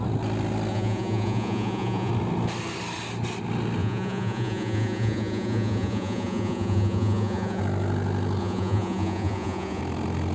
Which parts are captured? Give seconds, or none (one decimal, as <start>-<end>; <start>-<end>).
0.0-0.7; 2.1-3.8; 7.6-8.4; 9.8-10.3